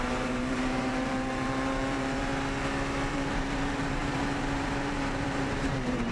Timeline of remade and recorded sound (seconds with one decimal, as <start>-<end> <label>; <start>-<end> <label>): 0.0-2.3 remade; 2.3-3.1 recorded; 3.1-6.1 remade